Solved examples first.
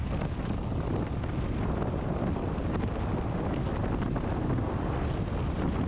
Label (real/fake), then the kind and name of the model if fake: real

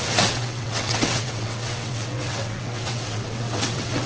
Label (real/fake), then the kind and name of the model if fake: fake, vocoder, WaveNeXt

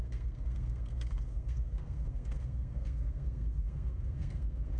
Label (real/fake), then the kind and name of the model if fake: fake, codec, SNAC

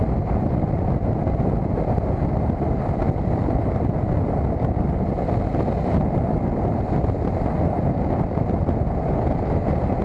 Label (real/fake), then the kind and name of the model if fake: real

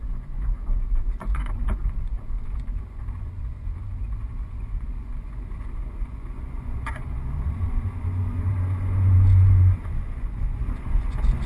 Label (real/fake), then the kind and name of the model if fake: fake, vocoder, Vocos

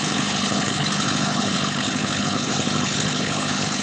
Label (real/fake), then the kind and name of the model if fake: fake, codec, HILCodec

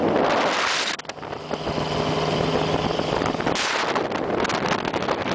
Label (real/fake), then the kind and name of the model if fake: real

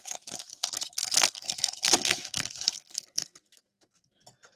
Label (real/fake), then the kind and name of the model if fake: fake, codec, SNAC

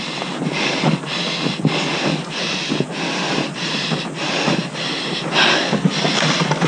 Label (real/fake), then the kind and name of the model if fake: real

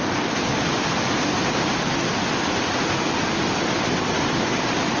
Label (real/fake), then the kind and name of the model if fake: real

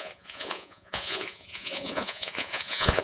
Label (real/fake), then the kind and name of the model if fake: fake, vocoder, Vocos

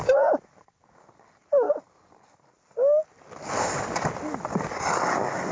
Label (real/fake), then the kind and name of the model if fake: real